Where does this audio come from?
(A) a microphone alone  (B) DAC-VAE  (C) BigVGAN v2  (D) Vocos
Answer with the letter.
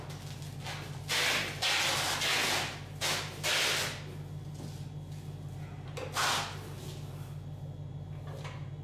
A